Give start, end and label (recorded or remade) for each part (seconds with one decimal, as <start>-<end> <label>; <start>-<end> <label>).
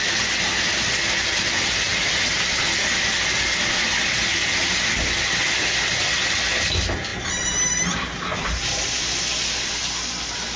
0.0-10.6 recorded